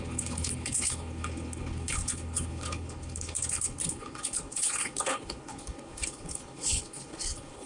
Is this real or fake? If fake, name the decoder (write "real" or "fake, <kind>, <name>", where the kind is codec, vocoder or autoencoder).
fake, codec, HILCodec